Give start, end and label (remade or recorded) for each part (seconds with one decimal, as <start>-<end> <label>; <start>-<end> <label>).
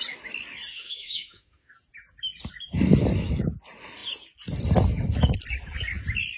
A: 0.0-0.7 recorded; 0.7-1.7 remade; 1.7-6.4 recorded